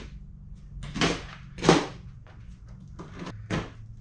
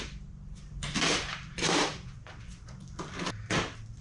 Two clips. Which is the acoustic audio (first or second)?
first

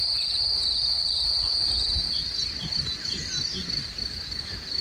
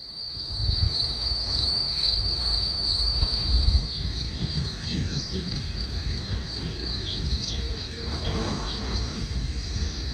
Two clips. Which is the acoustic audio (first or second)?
first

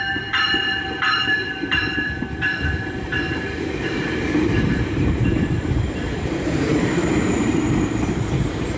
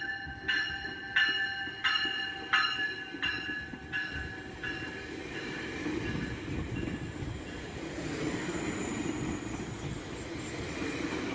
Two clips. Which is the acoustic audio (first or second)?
second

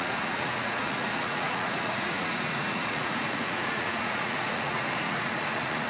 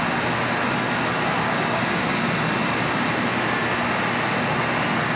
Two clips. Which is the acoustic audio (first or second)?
second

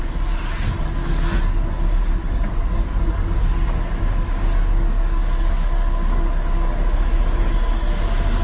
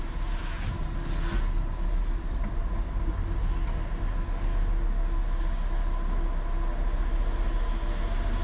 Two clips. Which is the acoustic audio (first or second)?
second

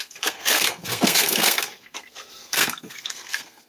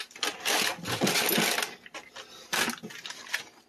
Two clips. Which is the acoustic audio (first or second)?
second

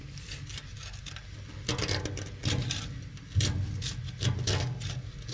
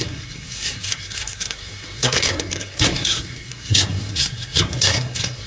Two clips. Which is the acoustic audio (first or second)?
first